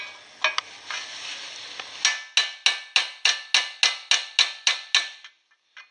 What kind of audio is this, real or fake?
real